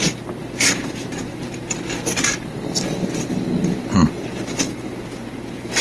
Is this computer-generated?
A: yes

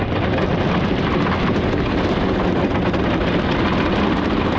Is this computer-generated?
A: no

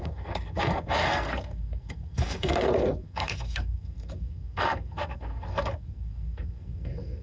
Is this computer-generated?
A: yes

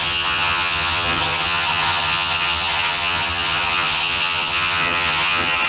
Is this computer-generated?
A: yes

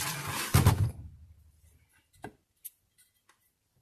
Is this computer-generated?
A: no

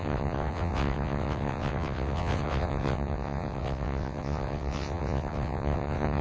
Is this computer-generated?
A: yes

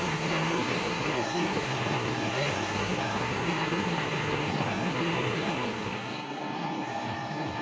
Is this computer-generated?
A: yes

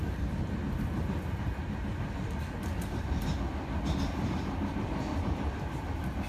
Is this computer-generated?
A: no